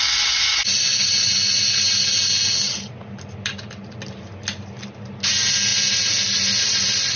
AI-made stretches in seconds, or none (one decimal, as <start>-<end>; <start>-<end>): none